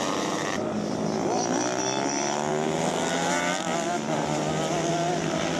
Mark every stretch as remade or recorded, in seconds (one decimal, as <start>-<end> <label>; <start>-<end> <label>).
0.0-0.4 remade; 0.4-1.4 recorded; 1.4-2.5 remade; 2.5-4.9 recorded; 4.9-5.6 remade